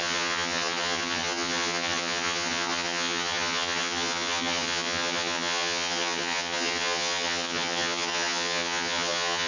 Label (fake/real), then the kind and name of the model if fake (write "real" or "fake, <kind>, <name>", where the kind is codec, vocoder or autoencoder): fake, vocoder, HiFi-GAN